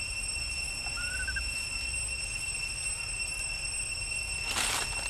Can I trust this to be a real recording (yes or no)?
yes